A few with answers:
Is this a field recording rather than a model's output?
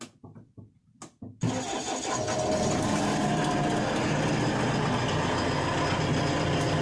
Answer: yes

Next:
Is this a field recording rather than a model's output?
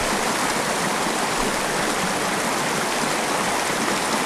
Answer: yes